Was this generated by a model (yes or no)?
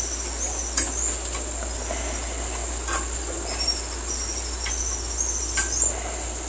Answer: no